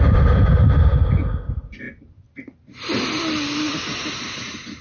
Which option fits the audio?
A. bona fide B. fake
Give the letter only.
A